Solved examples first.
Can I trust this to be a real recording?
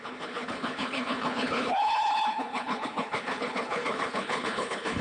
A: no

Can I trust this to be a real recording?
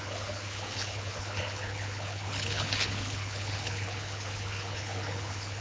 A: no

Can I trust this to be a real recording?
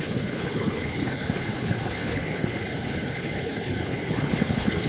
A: no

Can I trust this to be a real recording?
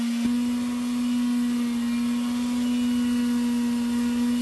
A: yes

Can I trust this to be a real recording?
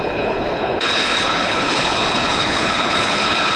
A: no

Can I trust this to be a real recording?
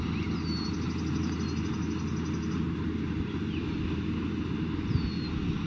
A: yes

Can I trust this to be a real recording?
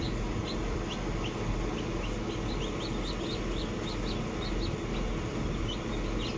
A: yes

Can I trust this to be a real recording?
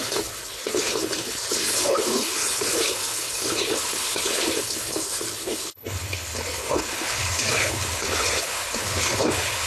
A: no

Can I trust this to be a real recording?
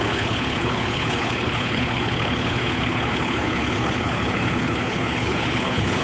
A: no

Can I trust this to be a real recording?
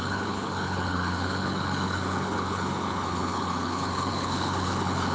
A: no